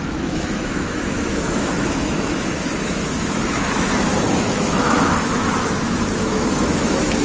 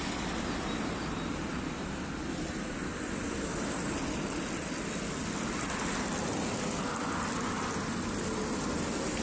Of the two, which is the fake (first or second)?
first